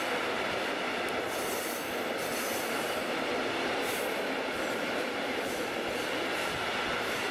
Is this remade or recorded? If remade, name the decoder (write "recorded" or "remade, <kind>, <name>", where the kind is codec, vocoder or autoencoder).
recorded